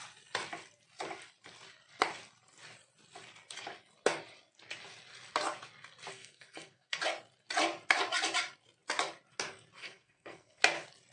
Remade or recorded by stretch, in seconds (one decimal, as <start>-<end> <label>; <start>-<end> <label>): 0.0-6.1 recorded; 6.1-7.0 remade; 7.0-9.8 recorded; 9.8-10.6 remade; 10.6-11.1 recorded